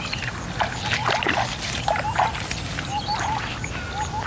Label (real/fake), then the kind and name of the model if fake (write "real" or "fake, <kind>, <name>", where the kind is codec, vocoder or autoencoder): real